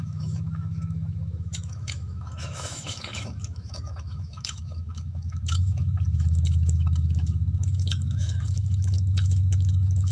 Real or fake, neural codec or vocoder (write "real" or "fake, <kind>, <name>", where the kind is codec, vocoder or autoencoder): fake, autoencoder, DAC-VAE